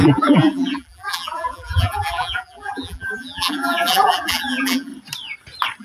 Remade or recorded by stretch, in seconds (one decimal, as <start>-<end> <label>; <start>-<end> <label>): 0.0-4.9 remade; 4.9-5.8 recorded